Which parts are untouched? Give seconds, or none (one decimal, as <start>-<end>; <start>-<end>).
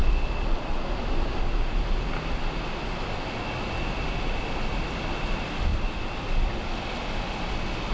0.0-7.9